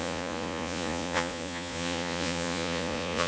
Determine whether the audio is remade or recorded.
remade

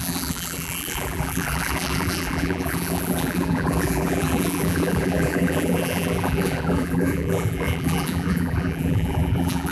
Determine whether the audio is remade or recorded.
remade